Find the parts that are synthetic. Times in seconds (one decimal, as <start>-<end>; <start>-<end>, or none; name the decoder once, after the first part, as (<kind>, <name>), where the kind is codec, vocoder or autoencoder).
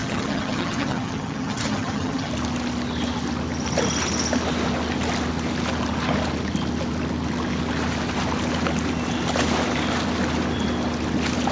0.0-2.3 (vocoder, HiFi-GAN)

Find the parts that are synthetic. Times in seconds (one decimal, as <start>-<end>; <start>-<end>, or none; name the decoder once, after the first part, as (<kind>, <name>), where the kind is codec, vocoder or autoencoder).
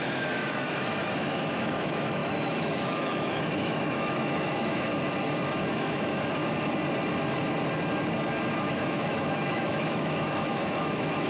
0.0-4.9 (autoencoder, DAC-VAE); 5.7-6.4; 8.5-11.3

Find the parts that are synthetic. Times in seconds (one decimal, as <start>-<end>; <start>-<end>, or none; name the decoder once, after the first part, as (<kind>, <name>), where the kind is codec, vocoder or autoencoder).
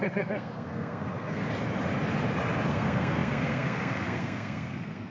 0.0-1.4 (codec, SNAC); 2.7-5.1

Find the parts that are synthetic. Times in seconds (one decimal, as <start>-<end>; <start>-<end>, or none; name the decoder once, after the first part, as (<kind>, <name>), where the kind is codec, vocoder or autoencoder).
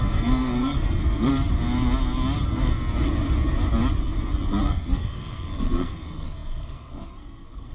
0.0-1.3 (codec, SNAC); 4.6-7.7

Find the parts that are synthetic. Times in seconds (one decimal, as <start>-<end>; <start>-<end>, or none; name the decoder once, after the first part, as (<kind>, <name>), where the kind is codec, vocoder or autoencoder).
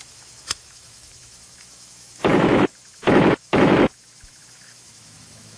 0.0-5.6 (autoencoder, DAC-VAE)